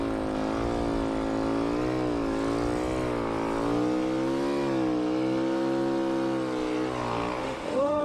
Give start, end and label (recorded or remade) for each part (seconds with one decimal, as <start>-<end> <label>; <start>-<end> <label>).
0.0-7.4 recorded; 7.4-8.0 remade